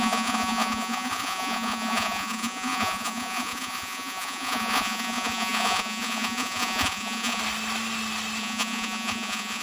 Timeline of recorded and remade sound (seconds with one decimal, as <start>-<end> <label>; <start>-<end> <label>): 0.0-7.4 remade; 7.4-8.4 recorded; 8.4-9.6 remade